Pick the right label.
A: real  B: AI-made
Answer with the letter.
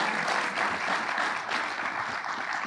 A